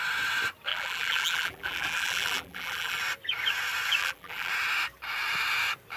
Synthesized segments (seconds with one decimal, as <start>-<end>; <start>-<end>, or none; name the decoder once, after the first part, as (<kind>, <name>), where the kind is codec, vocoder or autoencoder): 0.7-3.0 (vocoder, BigVGAN v2); 4.0-4.5